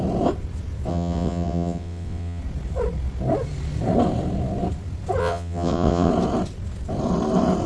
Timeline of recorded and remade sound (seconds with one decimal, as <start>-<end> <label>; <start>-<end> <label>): 0.0-0.9 recorded; 0.9-2.4 remade; 2.4-5.2 recorded; 5.2-6.1 remade; 6.1-7.7 recorded